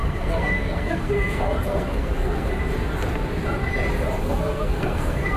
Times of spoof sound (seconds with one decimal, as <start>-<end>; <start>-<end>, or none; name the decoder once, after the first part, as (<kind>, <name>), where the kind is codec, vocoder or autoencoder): 0.0-2.5 (codec, SNAC); 4.2-5.4